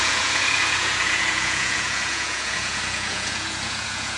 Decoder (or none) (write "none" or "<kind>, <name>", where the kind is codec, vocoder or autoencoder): vocoder, Vocos